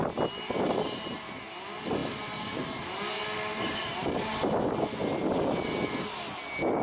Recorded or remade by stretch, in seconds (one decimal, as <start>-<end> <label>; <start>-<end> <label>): 0.0-2.0 recorded; 2.0-2.8 remade; 2.8-3.5 recorded; 3.5-4.8 remade; 4.8-6.8 recorded